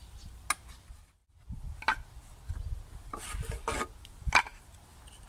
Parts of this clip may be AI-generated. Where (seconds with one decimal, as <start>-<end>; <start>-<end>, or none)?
none